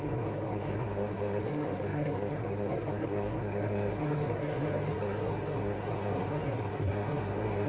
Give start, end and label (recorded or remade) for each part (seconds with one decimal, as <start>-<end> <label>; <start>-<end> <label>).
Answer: 0.0-7.7 remade